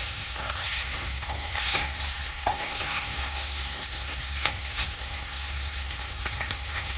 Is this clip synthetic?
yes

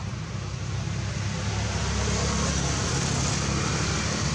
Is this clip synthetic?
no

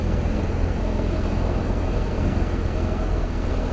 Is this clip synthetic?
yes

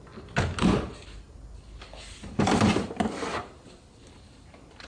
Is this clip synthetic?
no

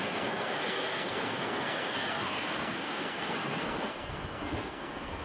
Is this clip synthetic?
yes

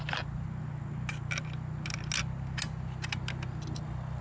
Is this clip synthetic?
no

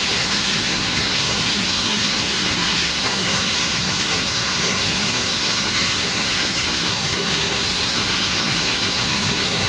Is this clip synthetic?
yes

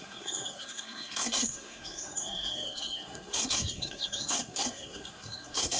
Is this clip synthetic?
yes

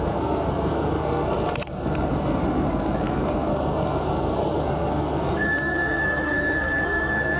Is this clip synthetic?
yes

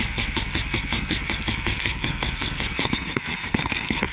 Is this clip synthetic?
yes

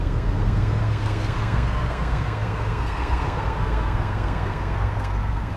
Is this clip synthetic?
yes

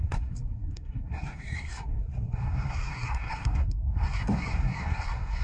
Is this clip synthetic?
yes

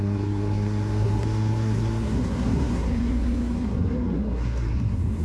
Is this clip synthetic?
yes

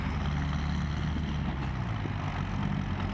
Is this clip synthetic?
no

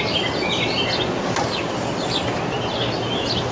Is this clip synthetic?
no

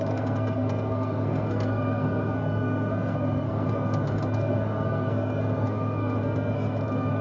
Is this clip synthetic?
yes